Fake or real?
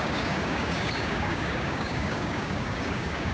fake